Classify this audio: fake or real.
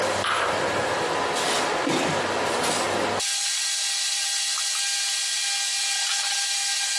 real